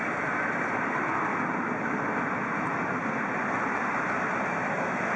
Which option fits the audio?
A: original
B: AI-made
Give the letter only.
A